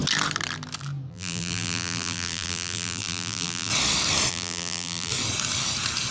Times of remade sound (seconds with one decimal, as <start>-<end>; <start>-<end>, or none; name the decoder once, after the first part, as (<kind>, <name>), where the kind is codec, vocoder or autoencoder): 1.1-3.7 (vocoder, BigVGAN v2); 4.3-5.1